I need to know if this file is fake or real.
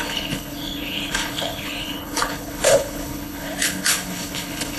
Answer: fake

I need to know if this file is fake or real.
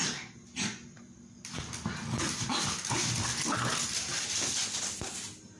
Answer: real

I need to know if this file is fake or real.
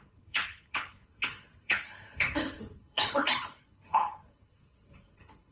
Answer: fake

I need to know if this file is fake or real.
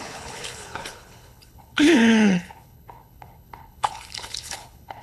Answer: fake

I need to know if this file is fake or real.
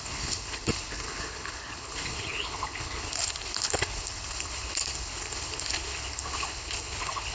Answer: fake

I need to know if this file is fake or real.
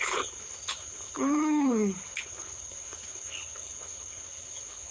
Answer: fake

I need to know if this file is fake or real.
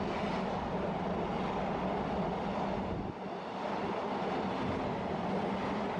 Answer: real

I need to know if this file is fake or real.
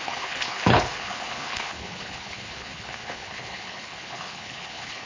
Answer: fake